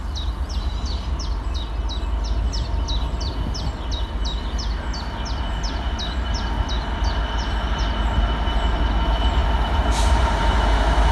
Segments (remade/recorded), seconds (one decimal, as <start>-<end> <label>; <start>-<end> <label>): 0.0-9.4 recorded; 9.4-10.5 remade; 10.5-11.1 recorded